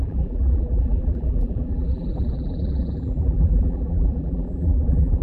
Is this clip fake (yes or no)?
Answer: yes